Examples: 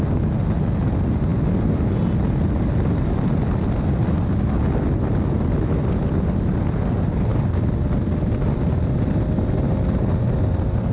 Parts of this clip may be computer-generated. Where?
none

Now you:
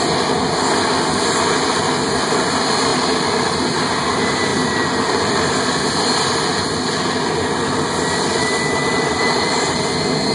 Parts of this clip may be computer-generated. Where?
2.9-3.9 (vocoder, BigVGAN v2); 8.3-9.9

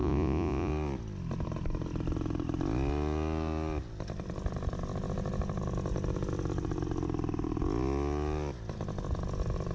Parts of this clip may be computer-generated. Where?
0.0-0.7 (vocoder, Vocos)

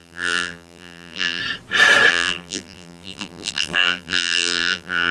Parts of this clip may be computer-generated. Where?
0.0-1.4 (vocoder, BigVGAN v2); 2.1-5.1

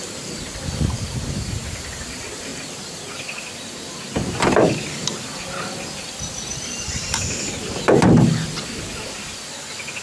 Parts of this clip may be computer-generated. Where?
none

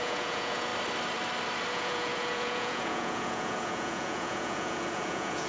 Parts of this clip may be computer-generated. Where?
0.0-0.7 (vocoder, Vocos); 1.7-5.5